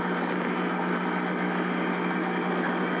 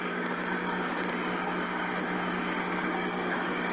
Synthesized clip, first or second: second